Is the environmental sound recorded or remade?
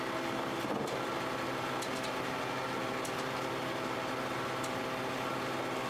recorded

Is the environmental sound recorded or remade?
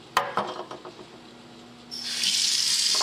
recorded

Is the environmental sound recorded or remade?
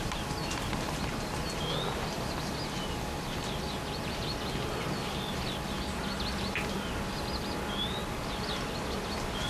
recorded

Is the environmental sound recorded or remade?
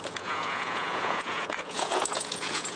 remade